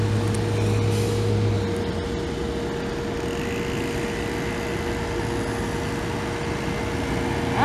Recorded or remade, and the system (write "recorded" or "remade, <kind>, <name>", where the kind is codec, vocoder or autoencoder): recorded